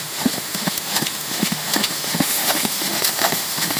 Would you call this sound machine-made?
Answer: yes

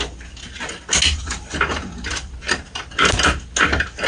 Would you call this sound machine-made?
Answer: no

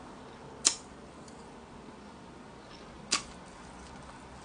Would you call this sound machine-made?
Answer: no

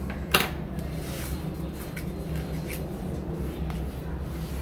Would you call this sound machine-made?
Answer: no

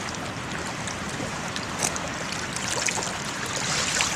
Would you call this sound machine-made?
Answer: no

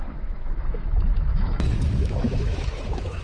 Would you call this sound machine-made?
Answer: yes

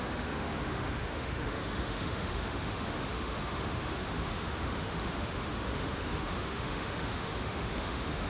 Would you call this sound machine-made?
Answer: yes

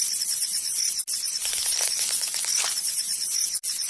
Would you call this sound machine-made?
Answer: no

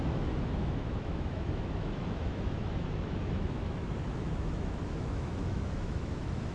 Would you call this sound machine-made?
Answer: yes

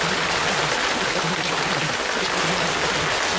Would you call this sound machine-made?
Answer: no